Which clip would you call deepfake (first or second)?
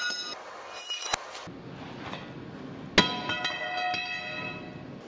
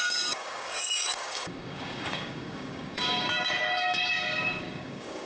second